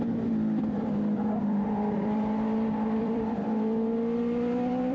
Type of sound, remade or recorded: remade